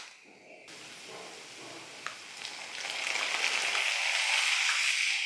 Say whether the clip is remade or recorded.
recorded